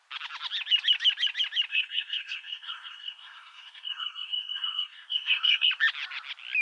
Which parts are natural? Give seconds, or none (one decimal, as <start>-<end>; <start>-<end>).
0.0-1.7; 5.7-6.6